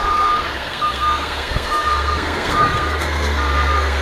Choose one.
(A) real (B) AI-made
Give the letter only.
B